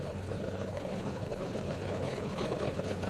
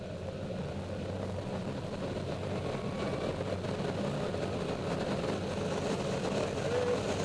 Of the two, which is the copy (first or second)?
first